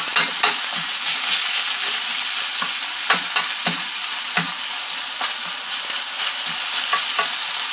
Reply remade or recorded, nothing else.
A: recorded